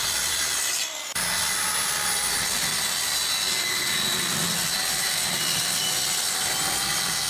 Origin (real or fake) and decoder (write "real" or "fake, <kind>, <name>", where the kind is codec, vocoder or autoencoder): real